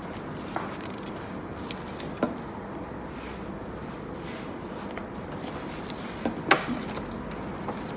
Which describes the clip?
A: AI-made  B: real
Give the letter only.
B